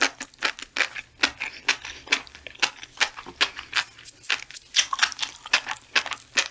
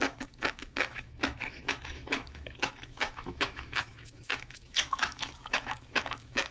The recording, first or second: first